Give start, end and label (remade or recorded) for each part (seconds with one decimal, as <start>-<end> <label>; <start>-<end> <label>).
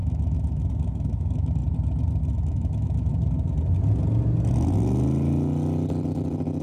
0.0-1.6 remade; 1.6-2.3 recorded; 2.3-3.1 remade; 3.1-6.6 recorded